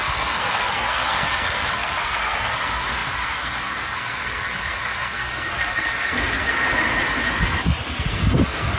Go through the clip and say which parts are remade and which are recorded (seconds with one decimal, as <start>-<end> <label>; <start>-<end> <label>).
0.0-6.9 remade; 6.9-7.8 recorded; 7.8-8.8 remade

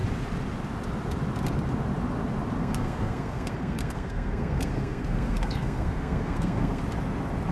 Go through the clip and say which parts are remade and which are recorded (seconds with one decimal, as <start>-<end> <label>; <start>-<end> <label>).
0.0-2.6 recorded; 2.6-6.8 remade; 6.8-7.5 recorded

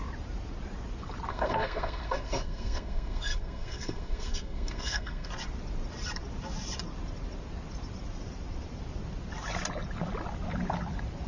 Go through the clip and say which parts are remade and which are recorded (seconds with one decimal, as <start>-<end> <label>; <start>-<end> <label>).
0.0-1.3 recorded; 1.3-5.3 remade; 5.3-11.3 recorded

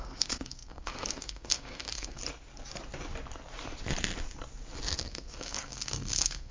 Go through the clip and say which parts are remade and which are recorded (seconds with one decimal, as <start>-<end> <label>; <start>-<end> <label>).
0.0-2.2 remade; 2.2-5.0 recorded; 5.0-6.5 remade